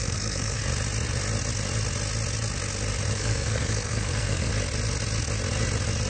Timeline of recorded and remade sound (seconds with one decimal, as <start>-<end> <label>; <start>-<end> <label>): 0.0-0.6 remade; 0.6-3.1 recorded; 3.1-4.5 remade; 4.5-6.1 recorded